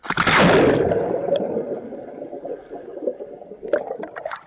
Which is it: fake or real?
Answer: real